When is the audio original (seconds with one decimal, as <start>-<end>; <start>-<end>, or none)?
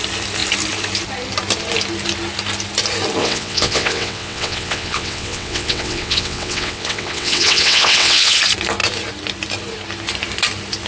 0.0-3.2; 8.4-10.9